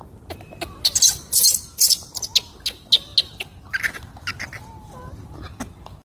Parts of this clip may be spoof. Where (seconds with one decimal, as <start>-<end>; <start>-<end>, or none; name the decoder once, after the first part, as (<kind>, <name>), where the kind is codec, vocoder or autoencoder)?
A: none